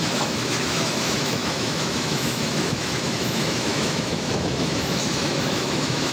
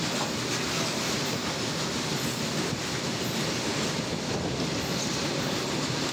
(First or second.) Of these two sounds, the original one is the second